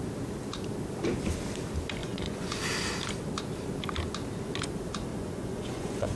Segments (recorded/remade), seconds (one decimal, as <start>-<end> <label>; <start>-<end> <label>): 0.0-2.0 recorded; 2.0-2.6 remade; 2.6-5.1 recorded; 5.1-6.2 remade

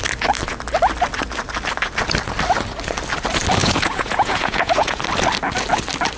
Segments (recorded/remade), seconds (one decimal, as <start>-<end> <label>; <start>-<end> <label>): 0.0-3.6 recorded; 3.6-5.0 remade; 5.0-6.2 recorded